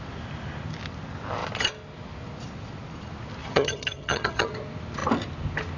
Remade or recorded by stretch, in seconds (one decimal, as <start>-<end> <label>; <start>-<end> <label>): 0.0-3.4 recorded; 3.4-4.5 remade; 4.5-5.8 recorded